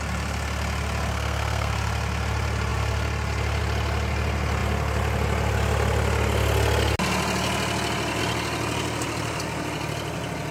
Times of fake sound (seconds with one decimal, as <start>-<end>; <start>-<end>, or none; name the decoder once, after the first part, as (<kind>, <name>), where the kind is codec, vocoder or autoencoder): 1.1-1.7 (codec, SNAC)